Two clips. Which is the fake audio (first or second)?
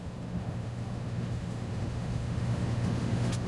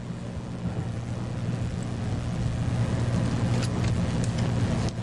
first